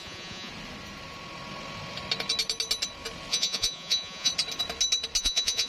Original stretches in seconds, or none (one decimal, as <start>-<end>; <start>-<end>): 0.5-3.3; 4.3-5.2

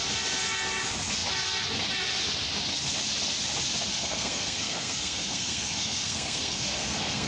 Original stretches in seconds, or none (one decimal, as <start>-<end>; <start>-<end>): 0.0-3.9